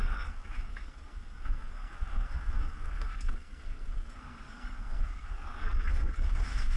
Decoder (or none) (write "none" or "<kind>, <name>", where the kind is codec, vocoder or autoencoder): codec, SNAC